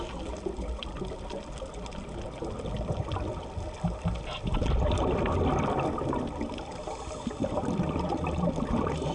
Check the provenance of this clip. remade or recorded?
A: recorded